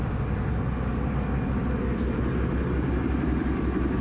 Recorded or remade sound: recorded